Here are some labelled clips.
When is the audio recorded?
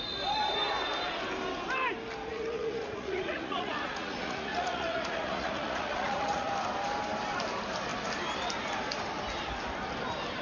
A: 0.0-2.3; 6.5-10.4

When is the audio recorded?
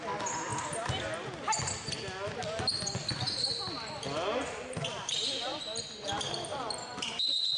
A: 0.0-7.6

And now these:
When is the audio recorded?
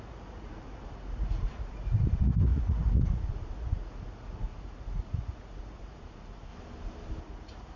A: 6.5-7.2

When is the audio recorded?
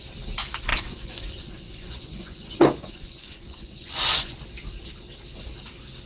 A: 0.0-0.7; 4.4-6.1